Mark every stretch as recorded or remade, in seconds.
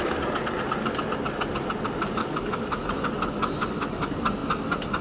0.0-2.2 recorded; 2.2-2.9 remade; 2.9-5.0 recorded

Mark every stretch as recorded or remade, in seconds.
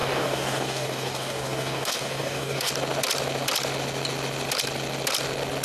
0.0-2.7 remade; 2.7-5.6 recorded